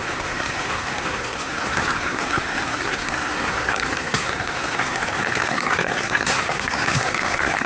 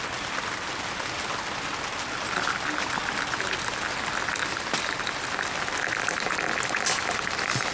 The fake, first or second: first